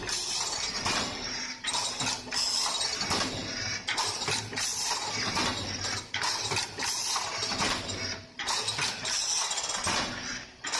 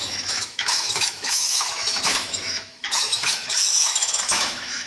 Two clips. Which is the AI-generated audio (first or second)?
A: second